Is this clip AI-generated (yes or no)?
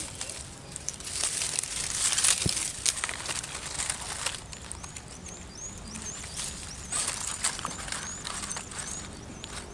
no